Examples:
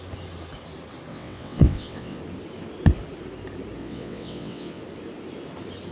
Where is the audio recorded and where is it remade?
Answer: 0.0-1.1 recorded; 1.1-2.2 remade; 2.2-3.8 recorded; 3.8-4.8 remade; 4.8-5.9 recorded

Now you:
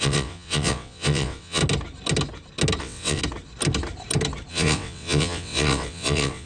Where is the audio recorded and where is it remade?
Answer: 0.0-1.6 remade; 1.6-2.8 recorded; 2.8-3.2 remade; 3.2-4.5 recorded; 4.5-6.5 remade

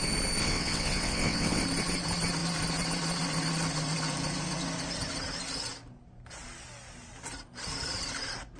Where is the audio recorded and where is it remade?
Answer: 0.0-0.4 recorded; 0.4-1.6 remade; 1.6-8.6 recorded

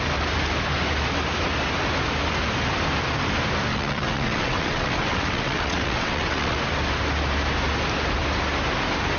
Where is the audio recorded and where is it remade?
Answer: 0.0-3.7 recorded; 3.7-6.6 remade; 6.6-9.2 recorded